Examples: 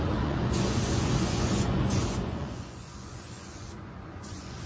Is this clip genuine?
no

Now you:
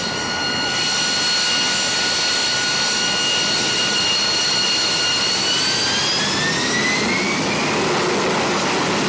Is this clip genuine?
yes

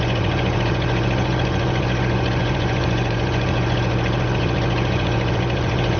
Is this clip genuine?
no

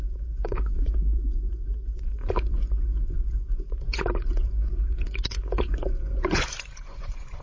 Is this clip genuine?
no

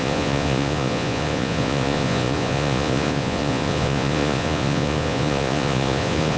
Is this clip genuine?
no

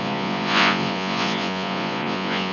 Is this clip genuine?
no